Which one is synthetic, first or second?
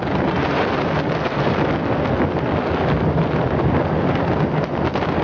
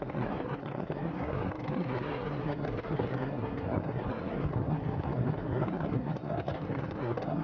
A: second